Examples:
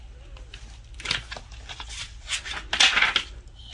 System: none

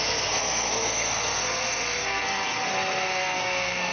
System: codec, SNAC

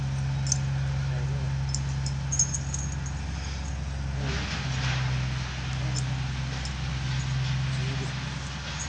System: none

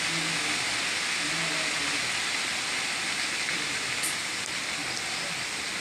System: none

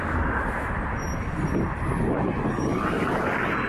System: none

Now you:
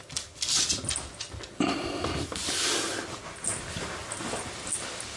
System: none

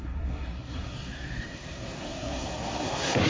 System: codec, SNAC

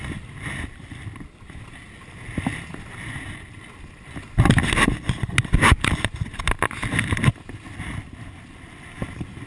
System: none